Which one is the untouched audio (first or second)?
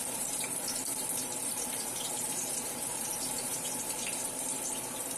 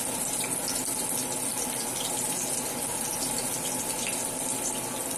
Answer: second